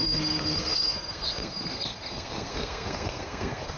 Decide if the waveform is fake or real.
fake